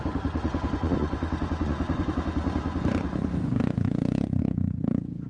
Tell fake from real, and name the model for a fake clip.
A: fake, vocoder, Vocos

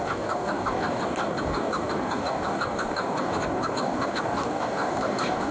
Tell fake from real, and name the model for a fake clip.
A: fake, codec, DAC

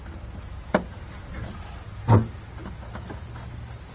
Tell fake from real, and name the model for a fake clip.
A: real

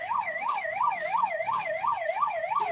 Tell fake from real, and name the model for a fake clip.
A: fake, codec, DAC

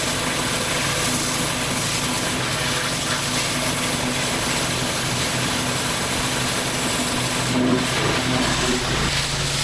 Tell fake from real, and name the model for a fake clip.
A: real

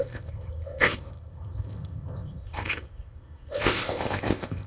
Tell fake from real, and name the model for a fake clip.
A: fake, codec, ZipCodec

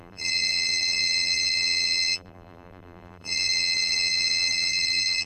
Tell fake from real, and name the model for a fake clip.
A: fake, vocoder, BigVGAN v2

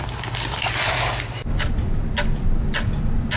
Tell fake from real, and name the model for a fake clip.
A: fake, vocoder, BigVGAN v2